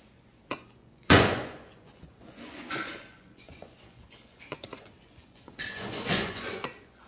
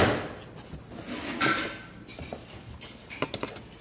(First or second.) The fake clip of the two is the first